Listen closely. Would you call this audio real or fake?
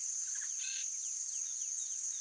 real